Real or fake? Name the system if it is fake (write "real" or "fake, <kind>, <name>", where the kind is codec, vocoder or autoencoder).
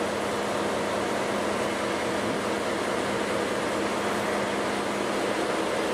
real